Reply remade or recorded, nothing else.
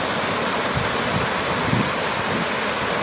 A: recorded